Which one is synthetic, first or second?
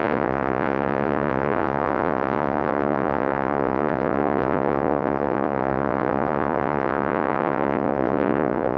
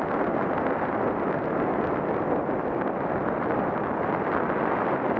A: first